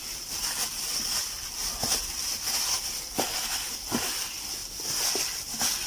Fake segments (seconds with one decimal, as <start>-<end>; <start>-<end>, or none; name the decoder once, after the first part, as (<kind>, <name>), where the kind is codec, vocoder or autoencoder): none